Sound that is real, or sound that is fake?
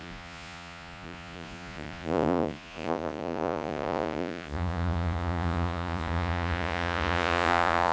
fake